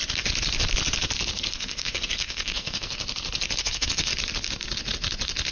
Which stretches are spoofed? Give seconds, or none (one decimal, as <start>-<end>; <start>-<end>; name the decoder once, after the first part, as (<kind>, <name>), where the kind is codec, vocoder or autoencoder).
1.5-3.0 (codec, SNAC); 3.6-4.1